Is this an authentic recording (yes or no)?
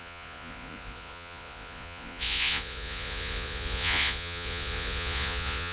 no